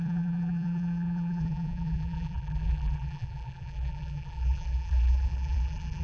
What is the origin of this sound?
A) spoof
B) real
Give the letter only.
A